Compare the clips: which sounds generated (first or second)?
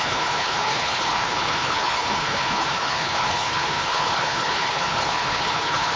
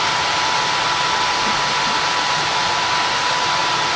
first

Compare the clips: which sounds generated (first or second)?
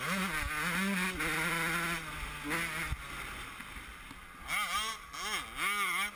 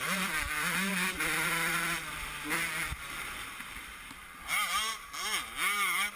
second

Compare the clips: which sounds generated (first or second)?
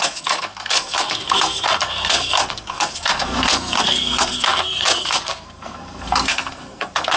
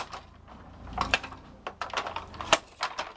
first